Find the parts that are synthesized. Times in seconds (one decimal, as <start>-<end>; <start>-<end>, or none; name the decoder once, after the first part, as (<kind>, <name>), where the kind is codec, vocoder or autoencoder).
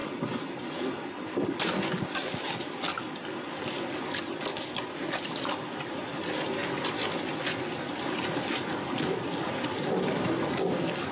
none